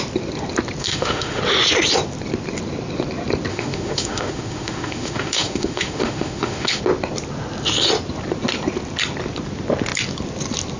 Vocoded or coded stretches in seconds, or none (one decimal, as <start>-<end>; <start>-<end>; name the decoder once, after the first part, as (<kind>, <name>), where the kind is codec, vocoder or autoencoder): 0.8-1.4 (autoencoder, DAC-VAE); 3.5-6.8